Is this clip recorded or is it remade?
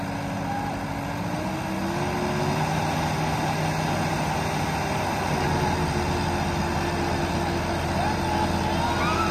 recorded